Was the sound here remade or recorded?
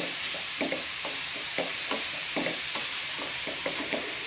remade